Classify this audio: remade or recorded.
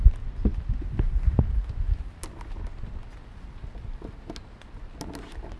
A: recorded